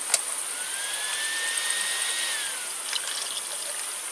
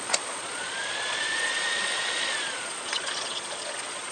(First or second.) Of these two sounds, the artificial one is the second